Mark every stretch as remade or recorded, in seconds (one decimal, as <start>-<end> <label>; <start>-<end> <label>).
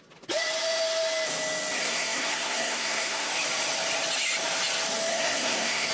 0.0-1.8 recorded; 1.8-3.3 remade; 3.3-5.1 recorded; 5.1-5.9 remade